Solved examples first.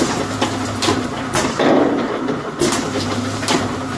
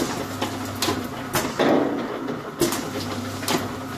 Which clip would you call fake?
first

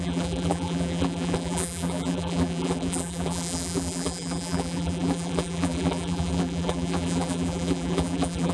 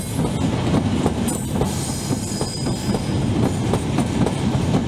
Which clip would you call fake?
first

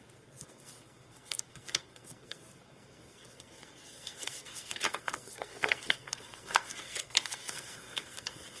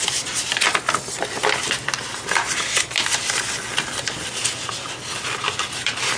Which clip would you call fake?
first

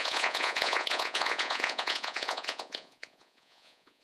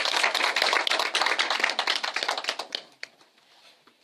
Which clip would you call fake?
first